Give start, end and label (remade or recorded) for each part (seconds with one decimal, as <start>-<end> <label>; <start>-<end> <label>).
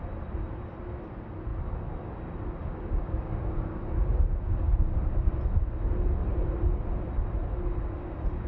0.0-2.6 recorded; 2.6-4.1 remade; 4.1-8.5 recorded